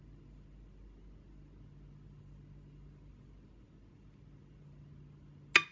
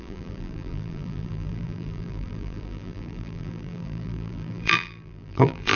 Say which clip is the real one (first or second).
first